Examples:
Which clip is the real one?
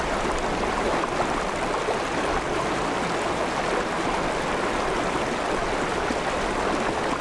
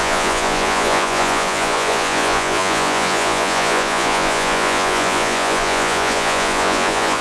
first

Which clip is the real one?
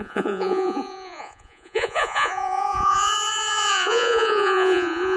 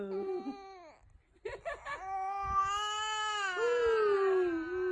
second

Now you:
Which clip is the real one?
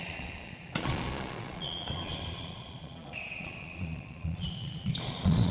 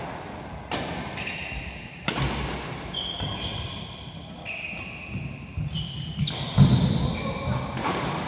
second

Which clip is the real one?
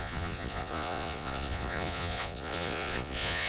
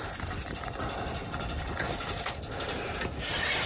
second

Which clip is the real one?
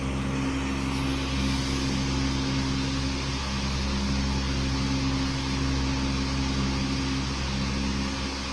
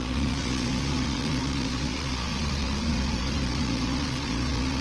first